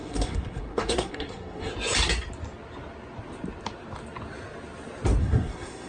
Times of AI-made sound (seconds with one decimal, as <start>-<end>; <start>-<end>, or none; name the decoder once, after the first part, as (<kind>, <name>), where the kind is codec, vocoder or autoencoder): 0.0-1.7 (codec, SNAC); 5.2-5.9